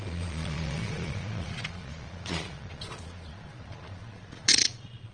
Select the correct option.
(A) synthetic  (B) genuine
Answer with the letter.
A